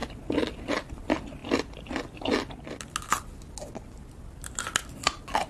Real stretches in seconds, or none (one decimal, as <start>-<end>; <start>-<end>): 0.0-5.5